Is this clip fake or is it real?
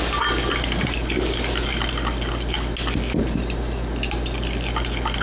real